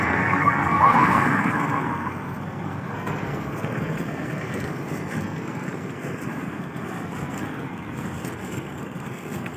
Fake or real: fake